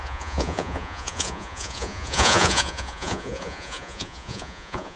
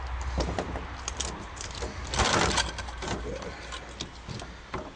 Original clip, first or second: second